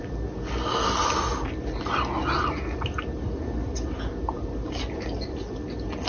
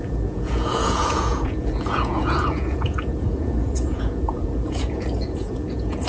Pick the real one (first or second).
first